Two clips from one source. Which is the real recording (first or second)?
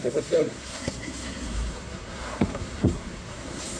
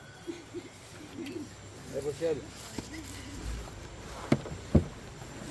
second